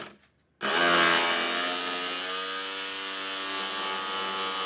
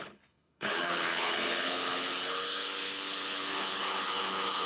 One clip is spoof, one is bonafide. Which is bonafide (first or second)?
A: first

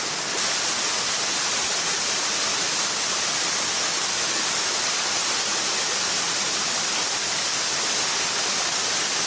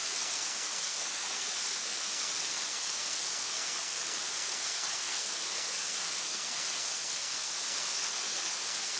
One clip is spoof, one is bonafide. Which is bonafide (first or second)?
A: first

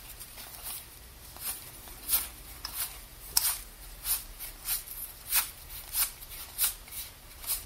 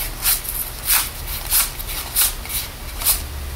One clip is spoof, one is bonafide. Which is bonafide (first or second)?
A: second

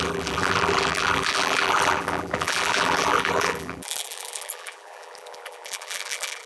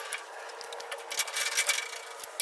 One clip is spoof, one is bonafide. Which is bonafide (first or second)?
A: second